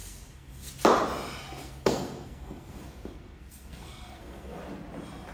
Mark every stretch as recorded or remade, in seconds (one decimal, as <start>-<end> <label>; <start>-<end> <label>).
0.0-0.7 remade; 0.7-1.6 recorded; 1.6-4.6 remade; 4.6-5.3 recorded